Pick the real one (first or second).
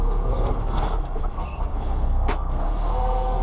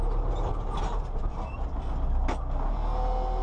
second